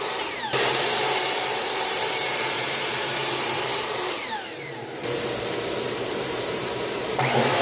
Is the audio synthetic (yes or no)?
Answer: yes